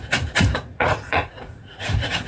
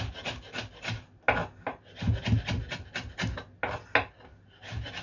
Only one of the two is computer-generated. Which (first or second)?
first